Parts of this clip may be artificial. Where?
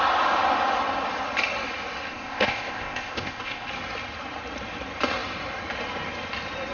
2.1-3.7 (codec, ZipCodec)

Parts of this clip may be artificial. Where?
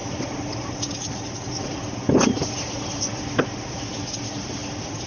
none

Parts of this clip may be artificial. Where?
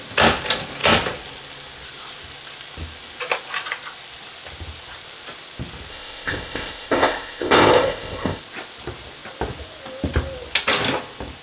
5.9-8.4 (codec, ZipCodec)